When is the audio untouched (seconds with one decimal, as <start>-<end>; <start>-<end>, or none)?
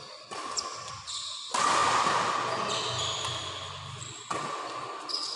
0.0-5.4